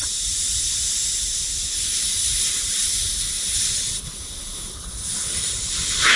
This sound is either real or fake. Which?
real